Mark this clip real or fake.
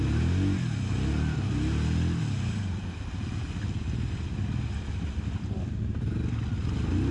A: real